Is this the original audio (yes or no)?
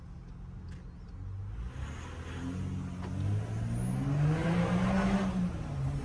yes